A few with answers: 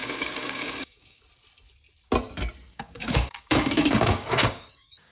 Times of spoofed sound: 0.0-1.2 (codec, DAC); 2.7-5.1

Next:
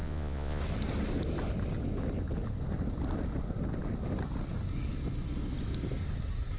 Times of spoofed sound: 0.0-0.6 (vocoder, Vocos)

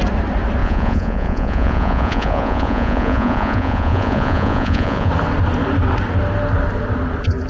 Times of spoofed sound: 0.6-5.1 (vocoder, Vocos)

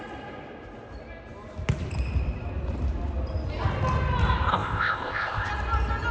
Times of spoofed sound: 4.5-5.5 (codec, ZipCodec)

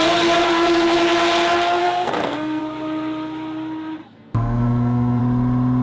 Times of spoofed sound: 1.8-2.6 (codec, SNAC); 4.0-5.2

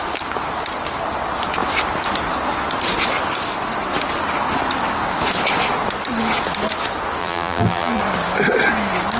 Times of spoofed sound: 7.2-8.0 (vocoder, BigVGAN v2)

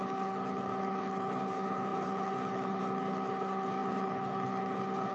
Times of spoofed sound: 0.0-5.1 (codec, HILCodec)